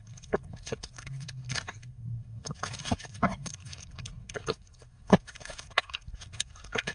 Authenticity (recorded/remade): remade